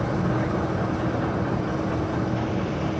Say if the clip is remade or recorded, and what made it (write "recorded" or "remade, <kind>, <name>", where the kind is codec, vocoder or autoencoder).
recorded